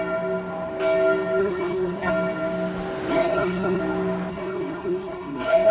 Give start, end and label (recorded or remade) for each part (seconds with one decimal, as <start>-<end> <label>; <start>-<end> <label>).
0.0-1.4 recorded; 1.4-2.1 remade; 2.1-3.1 recorded; 3.1-3.8 remade; 3.8-4.3 recorded; 4.3-5.7 remade